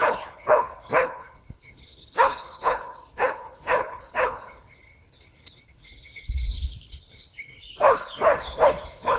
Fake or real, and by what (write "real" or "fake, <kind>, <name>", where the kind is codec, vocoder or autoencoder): fake, codec, HILCodec